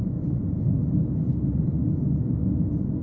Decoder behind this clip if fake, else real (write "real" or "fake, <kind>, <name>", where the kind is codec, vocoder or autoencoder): real